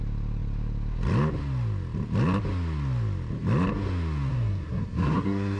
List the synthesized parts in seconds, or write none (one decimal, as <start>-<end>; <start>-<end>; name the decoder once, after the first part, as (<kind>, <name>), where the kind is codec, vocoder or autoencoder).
4.3-5.6 (codec, SNAC)